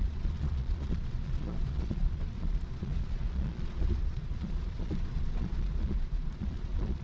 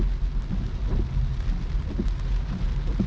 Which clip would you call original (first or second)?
second